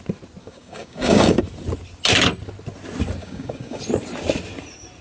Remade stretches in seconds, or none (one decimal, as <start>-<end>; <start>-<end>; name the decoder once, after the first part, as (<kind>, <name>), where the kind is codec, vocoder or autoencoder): 0.4-1.4 (codec, DAC); 3.2-3.8